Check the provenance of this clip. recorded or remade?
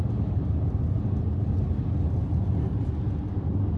recorded